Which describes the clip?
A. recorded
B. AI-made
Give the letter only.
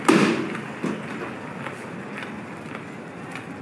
A